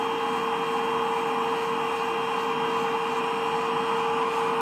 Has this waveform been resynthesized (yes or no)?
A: no